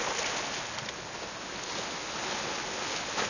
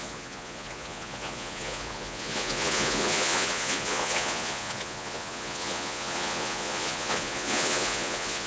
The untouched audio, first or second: first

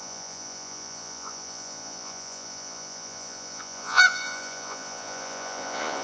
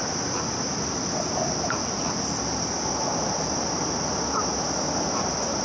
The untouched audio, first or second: second